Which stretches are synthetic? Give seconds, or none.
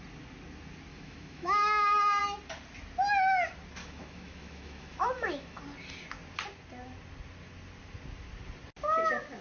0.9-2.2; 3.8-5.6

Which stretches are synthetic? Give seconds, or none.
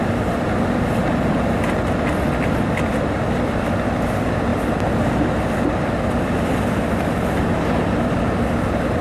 none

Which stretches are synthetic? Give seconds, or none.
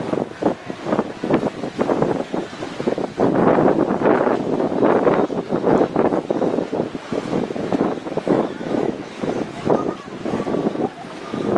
7.0-9.7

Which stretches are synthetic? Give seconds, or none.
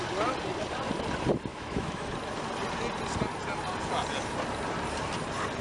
1.5-2.1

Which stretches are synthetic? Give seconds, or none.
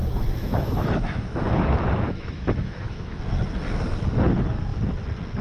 0.0-3.2